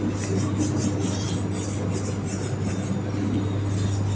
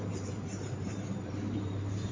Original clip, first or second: first